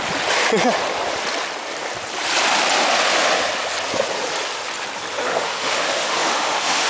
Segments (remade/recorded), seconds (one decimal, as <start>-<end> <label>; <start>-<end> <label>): 0.0-5.3 recorded; 5.3-6.9 remade